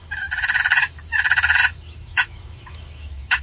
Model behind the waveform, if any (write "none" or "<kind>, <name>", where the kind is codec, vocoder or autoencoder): autoencoder, DAC-VAE